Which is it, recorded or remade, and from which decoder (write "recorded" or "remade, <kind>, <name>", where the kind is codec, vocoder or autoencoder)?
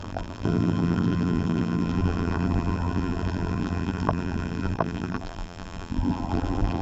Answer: remade, vocoder, BigVGAN v2